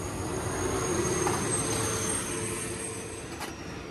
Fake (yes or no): no